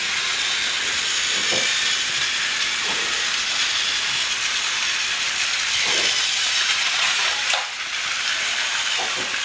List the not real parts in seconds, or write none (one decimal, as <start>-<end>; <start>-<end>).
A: 0.0-0.5; 6.3-7.3